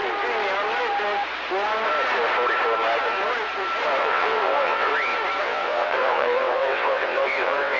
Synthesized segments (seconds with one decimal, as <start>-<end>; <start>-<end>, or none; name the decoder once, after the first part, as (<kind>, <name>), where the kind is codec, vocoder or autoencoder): 4.0-4.9 (vocoder, WaveNeXt); 5.4-7.8